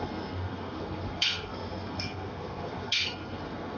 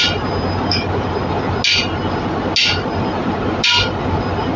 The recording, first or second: second